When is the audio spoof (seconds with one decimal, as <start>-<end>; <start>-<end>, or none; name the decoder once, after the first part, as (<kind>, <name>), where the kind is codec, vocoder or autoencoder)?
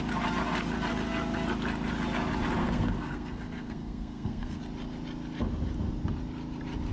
2.6-4.6 (codec, SNAC)